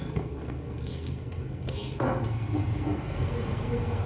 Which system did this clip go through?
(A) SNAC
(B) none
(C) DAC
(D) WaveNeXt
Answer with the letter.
A